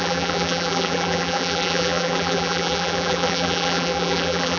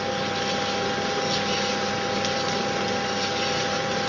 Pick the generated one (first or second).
first